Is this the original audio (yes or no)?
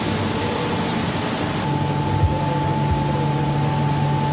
yes